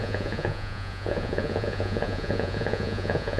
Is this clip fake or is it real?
fake